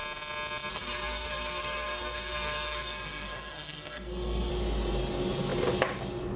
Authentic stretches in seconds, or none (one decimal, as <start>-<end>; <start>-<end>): 0.0-0.7; 4.5-6.4